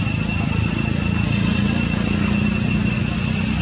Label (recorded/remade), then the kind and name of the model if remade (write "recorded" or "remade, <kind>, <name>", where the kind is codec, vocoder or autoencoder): recorded